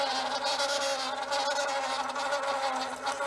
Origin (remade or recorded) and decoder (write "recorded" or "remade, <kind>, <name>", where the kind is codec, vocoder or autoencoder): recorded